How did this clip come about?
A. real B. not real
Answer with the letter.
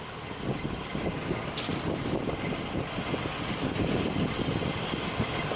A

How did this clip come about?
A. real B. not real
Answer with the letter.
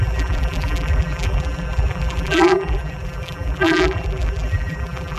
B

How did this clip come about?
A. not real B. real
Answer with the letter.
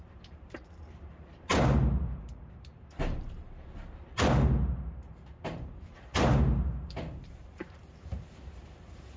A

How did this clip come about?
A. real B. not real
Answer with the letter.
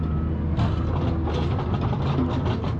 A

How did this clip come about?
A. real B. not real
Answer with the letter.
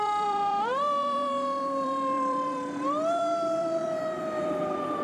B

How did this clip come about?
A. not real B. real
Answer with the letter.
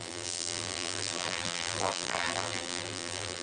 A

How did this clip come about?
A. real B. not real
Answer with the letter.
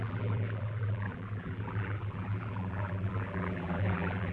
B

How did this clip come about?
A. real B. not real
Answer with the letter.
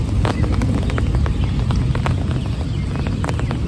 A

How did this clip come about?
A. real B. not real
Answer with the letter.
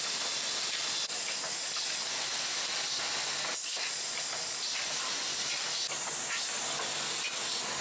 A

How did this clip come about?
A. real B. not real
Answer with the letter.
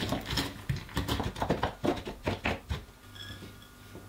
A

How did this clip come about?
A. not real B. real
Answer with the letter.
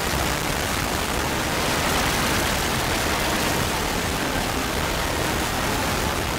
B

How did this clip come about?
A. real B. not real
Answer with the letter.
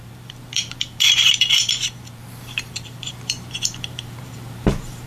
B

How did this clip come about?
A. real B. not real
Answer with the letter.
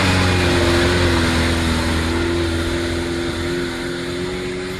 A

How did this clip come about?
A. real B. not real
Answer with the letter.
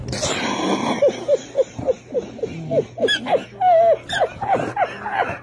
A